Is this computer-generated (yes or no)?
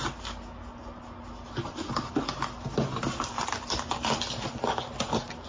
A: no